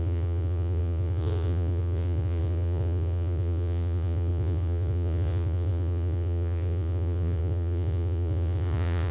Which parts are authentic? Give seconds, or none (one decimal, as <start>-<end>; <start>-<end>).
none